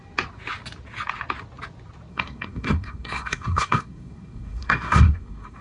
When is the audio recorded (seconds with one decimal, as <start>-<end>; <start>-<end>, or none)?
0.0-2.1